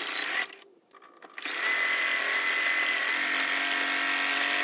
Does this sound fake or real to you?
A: real